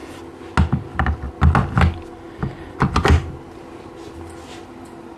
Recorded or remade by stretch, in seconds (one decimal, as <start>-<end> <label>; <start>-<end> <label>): 0.0-5.2 recorded